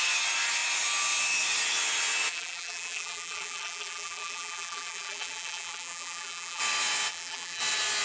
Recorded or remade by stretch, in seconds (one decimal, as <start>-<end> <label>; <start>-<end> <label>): 0.0-2.3 recorded; 2.3-6.6 remade; 6.6-7.1 recorded; 7.1-7.6 remade; 7.6-8.0 recorded